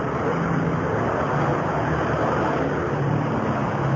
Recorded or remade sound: recorded